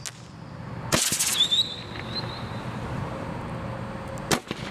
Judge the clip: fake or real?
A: real